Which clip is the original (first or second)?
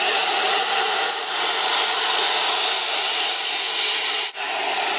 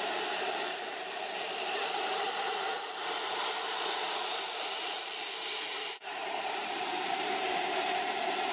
first